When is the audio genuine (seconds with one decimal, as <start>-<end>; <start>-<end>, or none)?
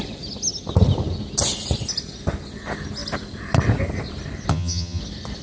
0.0-4.5; 5.0-5.4